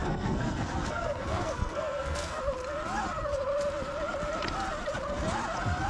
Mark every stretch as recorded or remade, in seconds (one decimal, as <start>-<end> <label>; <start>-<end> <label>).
0.0-2.4 remade; 2.4-5.9 recorded